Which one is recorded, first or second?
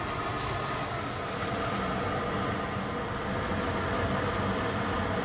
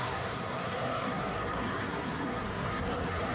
first